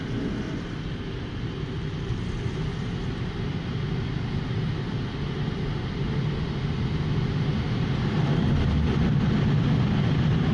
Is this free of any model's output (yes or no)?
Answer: yes